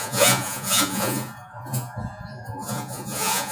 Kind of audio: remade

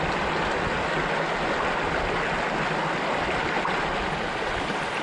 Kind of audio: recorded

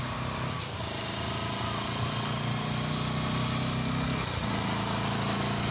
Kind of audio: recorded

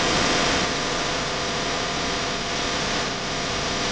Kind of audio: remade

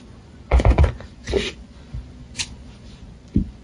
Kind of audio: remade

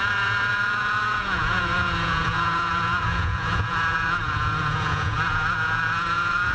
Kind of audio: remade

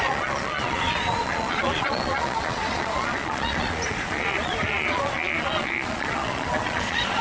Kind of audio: remade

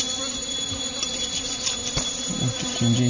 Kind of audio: recorded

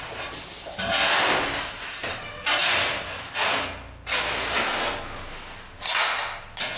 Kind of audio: recorded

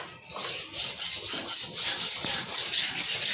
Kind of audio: recorded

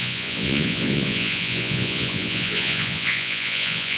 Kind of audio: remade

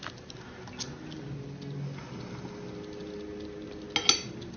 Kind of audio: recorded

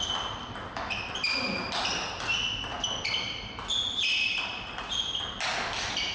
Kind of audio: recorded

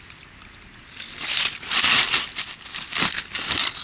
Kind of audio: recorded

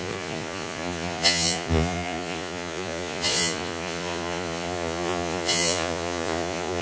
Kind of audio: remade